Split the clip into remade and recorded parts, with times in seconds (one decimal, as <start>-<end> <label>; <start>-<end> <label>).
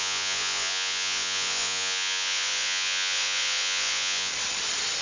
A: 0.0-4.3 remade; 4.3-5.0 recorded